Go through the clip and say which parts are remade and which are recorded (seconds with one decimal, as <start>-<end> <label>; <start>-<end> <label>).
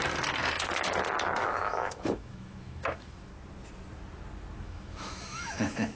0.0-1.4 recorded; 1.4-3.3 remade; 3.3-4.6 recorded; 4.6-6.0 remade